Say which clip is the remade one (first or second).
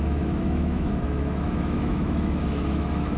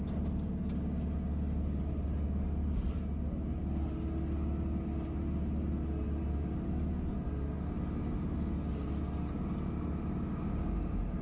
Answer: first